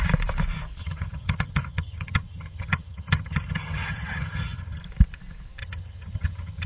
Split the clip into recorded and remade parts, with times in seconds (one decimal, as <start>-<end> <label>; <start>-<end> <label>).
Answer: 0.0-0.8 recorded; 0.8-4.8 remade; 4.8-5.6 recorded; 5.6-6.7 remade